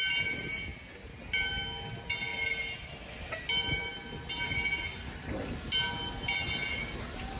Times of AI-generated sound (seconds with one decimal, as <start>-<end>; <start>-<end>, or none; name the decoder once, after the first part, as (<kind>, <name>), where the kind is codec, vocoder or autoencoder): none